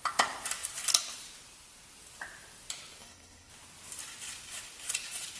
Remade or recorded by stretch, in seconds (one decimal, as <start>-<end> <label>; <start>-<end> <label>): 0.0-3.0 recorded; 3.0-3.5 remade; 3.5-5.4 recorded

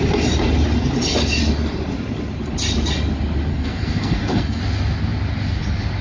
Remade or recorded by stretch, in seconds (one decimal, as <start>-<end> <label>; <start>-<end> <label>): 0.0-3.5 recorded; 3.5-4.6 remade; 4.6-6.0 recorded

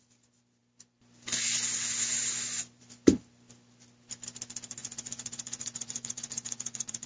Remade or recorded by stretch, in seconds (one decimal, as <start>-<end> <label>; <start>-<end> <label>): 0.0-4.8 recorded; 4.8-7.1 remade

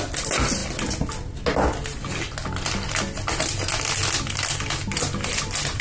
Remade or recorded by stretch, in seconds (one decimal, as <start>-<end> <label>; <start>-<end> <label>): 0.0-5.8 recorded

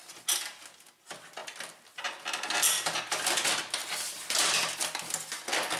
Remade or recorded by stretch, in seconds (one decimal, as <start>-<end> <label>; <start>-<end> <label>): 0.0-5.8 recorded

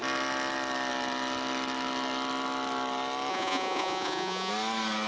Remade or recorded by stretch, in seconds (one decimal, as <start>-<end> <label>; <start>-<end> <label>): 0.0-3.3 recorded; 3.3-4.5 remade; 4.5-5.1 recorded

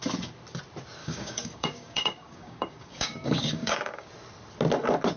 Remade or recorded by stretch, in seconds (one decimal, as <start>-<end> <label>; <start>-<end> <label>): 0.0-1.0 recorded; 1.0-4.1 remade; 4.1-5.2 recorded

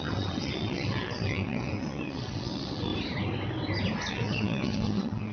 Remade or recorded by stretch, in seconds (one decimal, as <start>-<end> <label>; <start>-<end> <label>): 0.0-2.9 remade; 2.9-4.1 recorded; 4.1-5.3 remade